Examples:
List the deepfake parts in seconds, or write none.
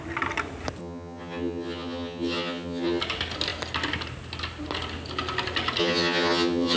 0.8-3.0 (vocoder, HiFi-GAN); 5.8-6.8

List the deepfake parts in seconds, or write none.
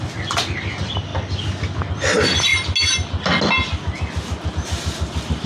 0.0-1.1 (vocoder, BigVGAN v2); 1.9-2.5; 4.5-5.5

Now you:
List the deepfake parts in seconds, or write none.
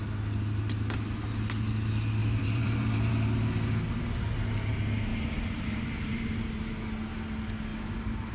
2.2-3.1 (vocoder, BigVGAN v2); 5.1-6.6; 7.7-8.3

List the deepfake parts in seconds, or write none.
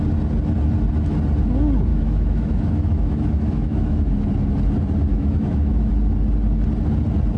1.9-4.3 (autoencoder, DAC-VAE); 5.1-5.9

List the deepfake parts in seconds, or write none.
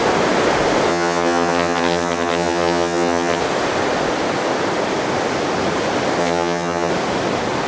0.9-3.4 (vocoder, HiFi-GAN); 6.2-6.9